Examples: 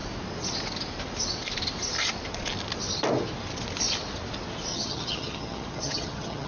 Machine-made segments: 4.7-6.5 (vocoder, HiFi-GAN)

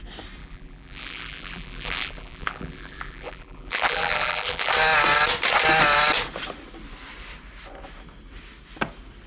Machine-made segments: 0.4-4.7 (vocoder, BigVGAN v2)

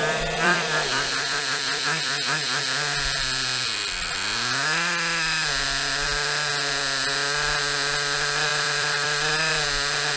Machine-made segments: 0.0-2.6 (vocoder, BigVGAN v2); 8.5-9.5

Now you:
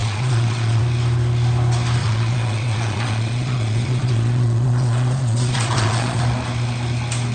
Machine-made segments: 0.0-0.8 (vocoder, Vocos); 2.0-6.2